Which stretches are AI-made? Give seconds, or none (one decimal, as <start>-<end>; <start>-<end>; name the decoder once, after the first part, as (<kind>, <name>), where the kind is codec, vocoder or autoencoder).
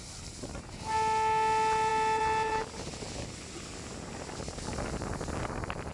none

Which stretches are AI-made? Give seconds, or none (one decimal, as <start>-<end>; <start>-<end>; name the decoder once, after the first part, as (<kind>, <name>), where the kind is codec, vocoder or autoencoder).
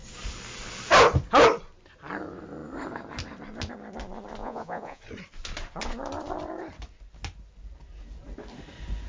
4.4-5.0 (vocoder, Vocos)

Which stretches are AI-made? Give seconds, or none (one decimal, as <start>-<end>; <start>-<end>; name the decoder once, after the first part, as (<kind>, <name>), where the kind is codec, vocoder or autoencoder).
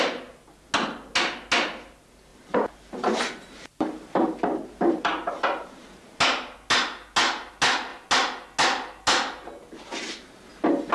2.3-6.2 (vocoder, BigVGAN v2)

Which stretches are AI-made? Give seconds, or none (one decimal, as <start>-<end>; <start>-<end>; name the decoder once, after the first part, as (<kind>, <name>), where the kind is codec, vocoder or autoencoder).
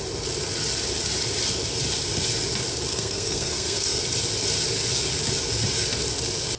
2.9-4.0 (codec, SNAC)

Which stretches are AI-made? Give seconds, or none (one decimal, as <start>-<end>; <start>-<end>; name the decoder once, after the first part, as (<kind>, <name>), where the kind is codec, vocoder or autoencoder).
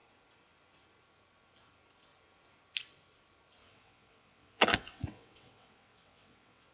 3.6-6.7 (vocoder, WaveNeXt)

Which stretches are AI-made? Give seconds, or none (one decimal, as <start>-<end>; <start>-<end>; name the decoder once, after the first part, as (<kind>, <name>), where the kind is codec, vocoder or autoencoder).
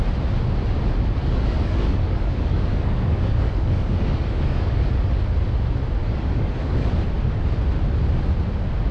1.2-5.1 (codec, DAC); 6.0-6.9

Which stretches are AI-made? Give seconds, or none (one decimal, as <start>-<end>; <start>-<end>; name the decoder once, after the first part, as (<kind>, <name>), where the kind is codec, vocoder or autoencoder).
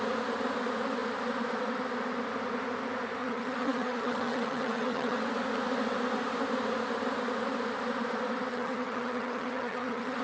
3.2-5.2 (vocoder, HiFi-GAN); 8.5-10.2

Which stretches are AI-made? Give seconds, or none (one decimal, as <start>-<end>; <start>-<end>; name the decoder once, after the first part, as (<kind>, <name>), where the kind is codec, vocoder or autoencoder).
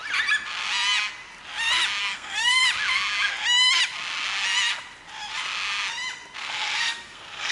2.0-2.6 (codec, SNAC); 6.4-7.5